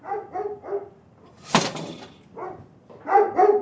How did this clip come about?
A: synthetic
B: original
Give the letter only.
B